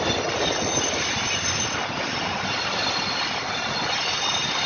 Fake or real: real